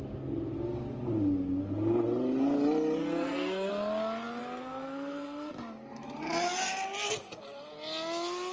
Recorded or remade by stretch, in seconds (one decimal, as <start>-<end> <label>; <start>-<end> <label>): 0.0-3.0 recorded; 3.0-3.7 remade; 3.7-4.4 recorded; 4.4-5.5 remade; 5.5-8.5 recorded